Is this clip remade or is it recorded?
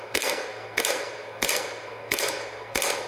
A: remade